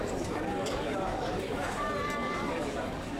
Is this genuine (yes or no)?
no